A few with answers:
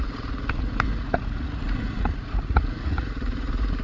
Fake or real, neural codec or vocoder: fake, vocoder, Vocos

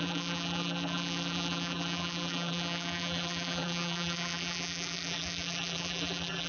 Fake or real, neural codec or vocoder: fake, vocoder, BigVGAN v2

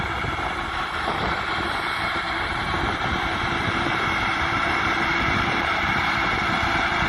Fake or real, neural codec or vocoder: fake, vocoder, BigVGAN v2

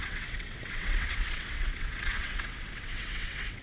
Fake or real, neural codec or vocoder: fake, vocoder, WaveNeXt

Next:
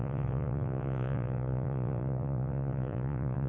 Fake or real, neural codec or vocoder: fake, vocoder, Vocos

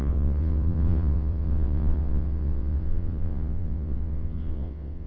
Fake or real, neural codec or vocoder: fake, vocoder, WaveNeXt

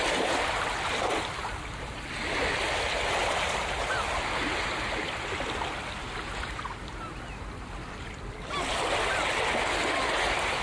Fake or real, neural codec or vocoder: real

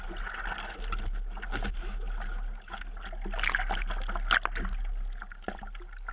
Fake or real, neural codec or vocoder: real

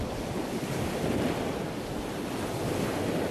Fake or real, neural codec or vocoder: real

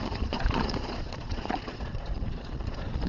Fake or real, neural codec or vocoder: fake, vocoder, Vocos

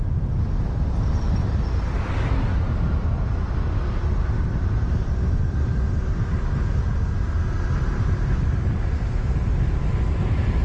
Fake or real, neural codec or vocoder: fake, vocoder, BigVGAN v2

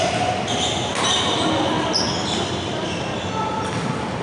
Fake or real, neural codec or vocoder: real